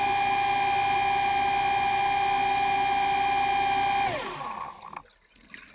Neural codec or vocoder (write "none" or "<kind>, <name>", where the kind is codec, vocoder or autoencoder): none